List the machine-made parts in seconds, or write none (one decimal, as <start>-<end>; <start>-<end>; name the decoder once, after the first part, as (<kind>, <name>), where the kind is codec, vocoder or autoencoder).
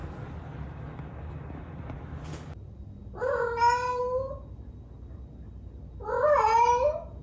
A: none